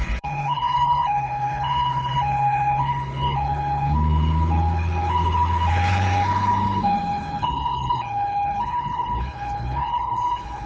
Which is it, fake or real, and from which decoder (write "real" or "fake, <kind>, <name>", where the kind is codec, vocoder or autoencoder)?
fake, codec, HILCodec